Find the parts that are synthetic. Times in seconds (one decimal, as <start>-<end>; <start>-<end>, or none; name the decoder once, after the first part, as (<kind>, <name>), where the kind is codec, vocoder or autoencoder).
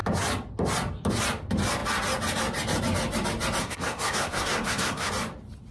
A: 3.6-5.1 (codec, SNAC)